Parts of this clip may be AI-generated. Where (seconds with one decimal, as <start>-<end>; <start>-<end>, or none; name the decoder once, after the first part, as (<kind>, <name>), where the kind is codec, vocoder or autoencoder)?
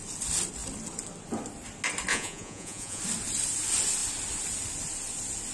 2.1-3.0 (vocoder, Vocos)